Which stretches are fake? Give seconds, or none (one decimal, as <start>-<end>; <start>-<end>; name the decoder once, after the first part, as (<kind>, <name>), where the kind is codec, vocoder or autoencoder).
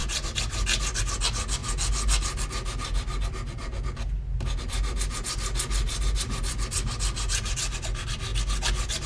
none